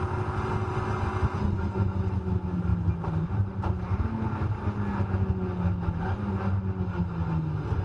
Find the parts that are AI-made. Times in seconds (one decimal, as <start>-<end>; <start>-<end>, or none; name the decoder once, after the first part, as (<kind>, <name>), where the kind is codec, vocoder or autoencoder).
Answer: none